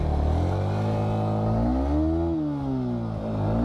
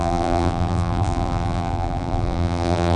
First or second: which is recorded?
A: first